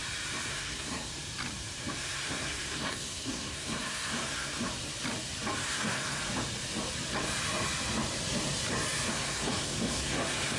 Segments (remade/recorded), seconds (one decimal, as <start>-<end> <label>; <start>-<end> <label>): 0.0-0.5 recorded; 0.5-1.1 remade; 1.1-1.9 recorded; 1.9-4.7 remade; 4.7-5.6 recorded; 5.6-6.2 remade; 6.2-9.1 recorded; 9.1-10.6 remade

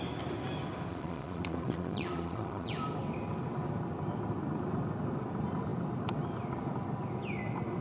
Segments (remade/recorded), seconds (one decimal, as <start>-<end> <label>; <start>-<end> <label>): 0.0-0.9 recorded; 0.9-2.7 remade; 2.7-7.8 recorded

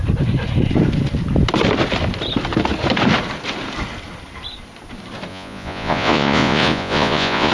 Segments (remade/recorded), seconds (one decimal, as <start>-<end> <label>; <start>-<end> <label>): 0.0-5.3 recorded; 5.3-7.5 remade